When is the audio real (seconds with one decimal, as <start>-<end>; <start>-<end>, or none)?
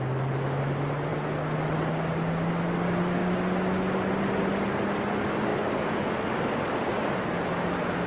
0.0-8.1